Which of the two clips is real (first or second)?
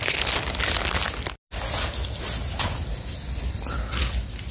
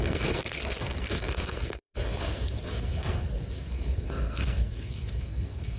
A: first